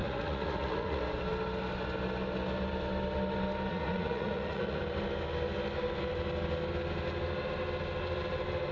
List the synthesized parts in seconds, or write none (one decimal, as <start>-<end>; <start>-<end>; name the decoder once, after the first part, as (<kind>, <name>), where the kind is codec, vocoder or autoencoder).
0.0-1.0 (vocoder, Vocos); 3.7-4.8